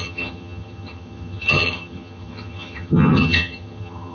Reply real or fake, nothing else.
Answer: fake